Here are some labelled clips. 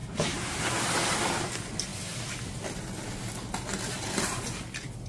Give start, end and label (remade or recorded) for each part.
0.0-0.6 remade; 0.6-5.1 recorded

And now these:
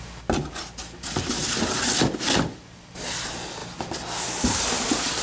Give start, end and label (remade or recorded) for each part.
0.0-5.2 recorded

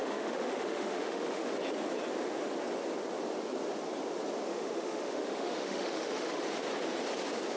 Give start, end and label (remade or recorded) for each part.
0.0-1.5 remade; 1.5-4.5 recorded; 4.5-6.4 remade; 6.4-7.6 recorded

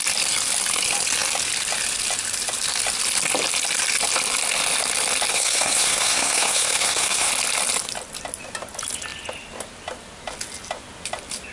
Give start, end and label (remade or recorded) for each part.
0.0-5.3 recorded; 5.3-7.3 remade; 7.3-11.5 recorded